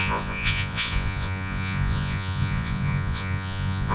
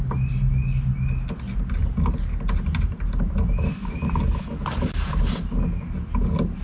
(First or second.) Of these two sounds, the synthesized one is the first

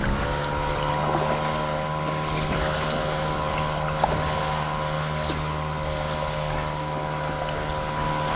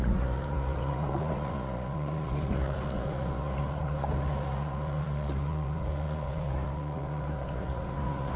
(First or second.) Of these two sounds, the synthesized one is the second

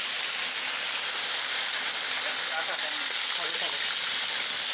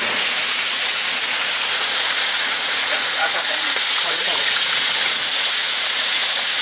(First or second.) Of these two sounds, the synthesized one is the second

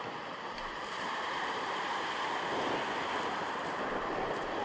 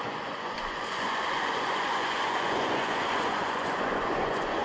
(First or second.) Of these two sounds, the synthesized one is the second